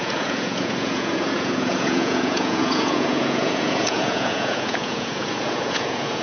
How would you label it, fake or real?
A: fake